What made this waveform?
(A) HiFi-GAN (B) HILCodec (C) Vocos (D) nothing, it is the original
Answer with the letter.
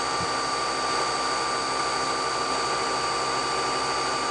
D